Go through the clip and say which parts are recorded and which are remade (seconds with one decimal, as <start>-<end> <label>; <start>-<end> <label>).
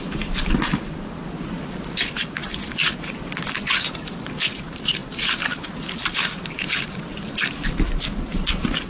0.0-8.9 recorded